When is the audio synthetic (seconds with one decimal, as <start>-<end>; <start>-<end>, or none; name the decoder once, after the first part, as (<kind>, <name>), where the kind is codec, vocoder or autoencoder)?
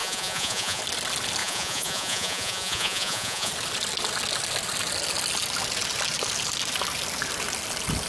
0.0-0.8 (vocoder, Vocos); 1.4-3.5